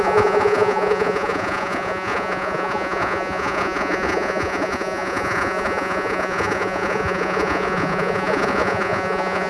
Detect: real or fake fake